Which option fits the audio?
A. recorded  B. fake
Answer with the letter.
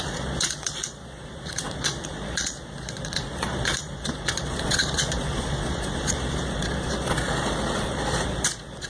B